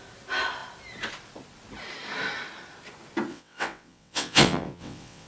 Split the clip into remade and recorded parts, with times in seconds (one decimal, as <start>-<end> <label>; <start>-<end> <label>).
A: 0.0-3.3 recorded; 3.3-5.3 remade